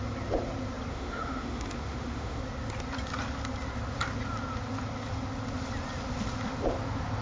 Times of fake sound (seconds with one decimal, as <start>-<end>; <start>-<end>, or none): 0.9-2.4